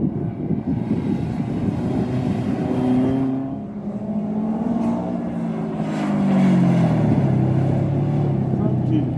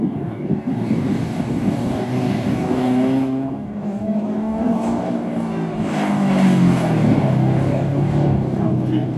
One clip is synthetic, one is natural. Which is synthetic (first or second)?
second